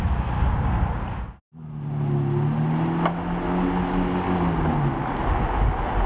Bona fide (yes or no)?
yes